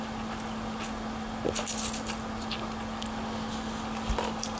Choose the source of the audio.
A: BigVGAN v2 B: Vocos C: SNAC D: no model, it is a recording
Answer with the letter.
D